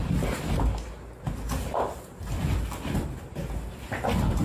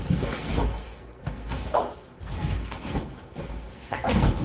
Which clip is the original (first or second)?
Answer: first